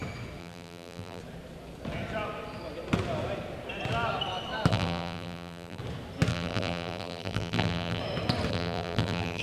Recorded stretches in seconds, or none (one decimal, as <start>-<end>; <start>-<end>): 0.0-0.4; 1.2-4.7; 5.8-6.3; 8.0-8.5